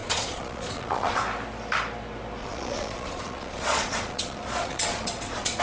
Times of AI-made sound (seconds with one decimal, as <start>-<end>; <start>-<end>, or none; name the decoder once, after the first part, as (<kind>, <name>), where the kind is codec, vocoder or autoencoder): 0.0-1.2 (vocoder, Vocos); 2.4-5.6